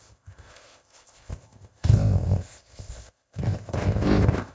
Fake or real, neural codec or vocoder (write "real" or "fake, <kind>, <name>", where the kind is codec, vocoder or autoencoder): fake, codec, ZipCodec